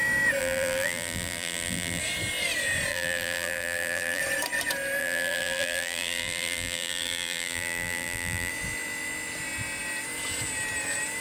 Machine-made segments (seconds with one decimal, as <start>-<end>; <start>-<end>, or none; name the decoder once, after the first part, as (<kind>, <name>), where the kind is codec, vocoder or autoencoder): 0.4-2.0 (vocoder, BigVGAN v2); 2.9-4.2; 5.0-8.5